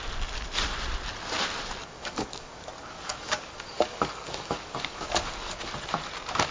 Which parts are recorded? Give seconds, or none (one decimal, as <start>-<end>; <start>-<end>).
0.0-1.8; 5.7-6.5